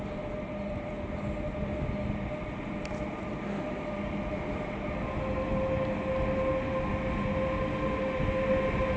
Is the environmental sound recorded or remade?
recorded